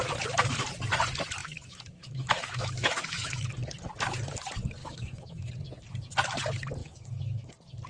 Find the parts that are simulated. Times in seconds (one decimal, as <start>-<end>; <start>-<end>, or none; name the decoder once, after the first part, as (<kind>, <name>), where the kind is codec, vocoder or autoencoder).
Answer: 1.4-3.5 (autoencoder, DAC-VAE); 4.8-5.5; 6.8-7.5